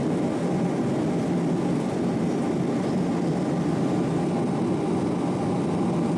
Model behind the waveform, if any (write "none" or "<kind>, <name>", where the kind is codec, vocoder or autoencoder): none